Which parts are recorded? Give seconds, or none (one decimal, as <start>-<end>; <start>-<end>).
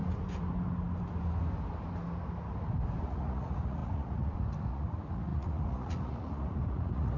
0.0-3.0